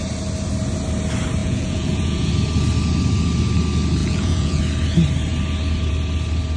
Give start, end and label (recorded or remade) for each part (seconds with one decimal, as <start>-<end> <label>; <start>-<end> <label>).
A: 0.0-1.4 recorded; 1.4-2.3 remade; 2.3-4.0 recorded; 4.0-4.6 remade; 4.6-6.6 recorded